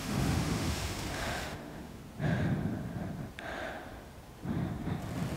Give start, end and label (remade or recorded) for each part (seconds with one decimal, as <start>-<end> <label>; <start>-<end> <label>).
0.0-2.0 remade; 2.0-5.4 recorded